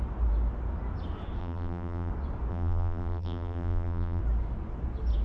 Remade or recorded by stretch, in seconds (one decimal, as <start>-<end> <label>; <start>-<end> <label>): 0.0-1.4 recorded; 1.4-2.1 remade; 2.1-2.5 recorded; 2.5-4.2 remade; 4.2-5.2 recorded